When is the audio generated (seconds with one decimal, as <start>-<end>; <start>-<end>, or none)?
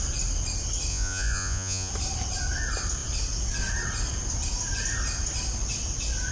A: 0.9-1.9